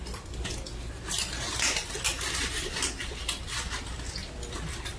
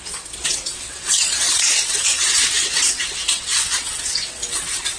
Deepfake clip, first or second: second